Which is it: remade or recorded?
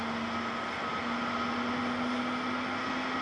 recorded